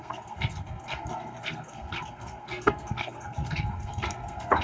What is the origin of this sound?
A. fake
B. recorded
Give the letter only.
A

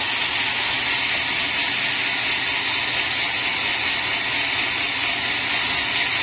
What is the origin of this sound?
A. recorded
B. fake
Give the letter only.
A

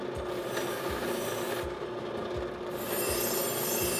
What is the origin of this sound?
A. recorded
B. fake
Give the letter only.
A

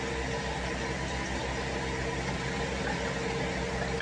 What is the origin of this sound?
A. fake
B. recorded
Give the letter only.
B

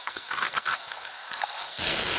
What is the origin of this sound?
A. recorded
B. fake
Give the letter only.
B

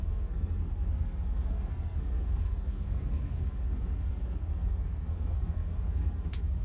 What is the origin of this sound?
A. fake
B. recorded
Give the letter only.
A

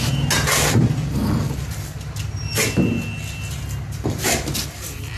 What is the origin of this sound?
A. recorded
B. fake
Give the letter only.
A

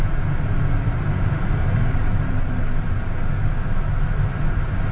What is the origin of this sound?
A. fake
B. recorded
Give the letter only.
B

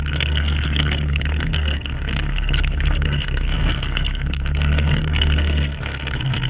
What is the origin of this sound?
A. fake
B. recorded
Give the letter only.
A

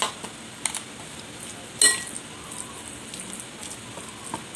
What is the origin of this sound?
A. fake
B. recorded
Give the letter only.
B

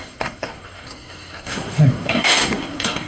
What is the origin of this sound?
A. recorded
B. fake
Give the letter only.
B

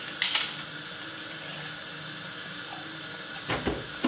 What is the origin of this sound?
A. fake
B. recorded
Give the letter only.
B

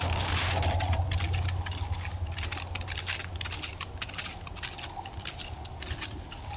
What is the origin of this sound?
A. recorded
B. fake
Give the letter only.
A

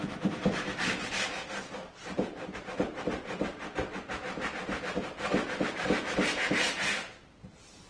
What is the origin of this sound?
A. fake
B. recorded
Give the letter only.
B